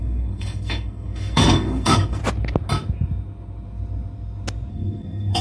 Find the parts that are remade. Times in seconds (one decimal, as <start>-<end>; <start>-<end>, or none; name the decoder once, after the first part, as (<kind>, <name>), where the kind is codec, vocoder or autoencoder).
0.0-2.2 (codec, SNAC); 4.7-5.4